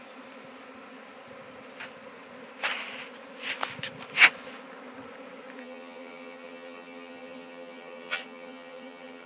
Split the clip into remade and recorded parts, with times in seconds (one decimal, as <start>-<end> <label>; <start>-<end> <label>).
0.0-5.6 recorded; 5.6-9.3 remade